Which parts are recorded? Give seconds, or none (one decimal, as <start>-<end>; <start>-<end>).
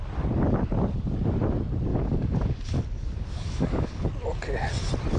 0.0-1.9; 4.1-5.2